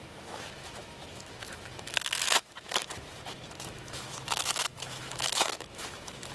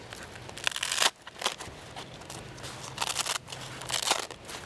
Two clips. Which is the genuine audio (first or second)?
second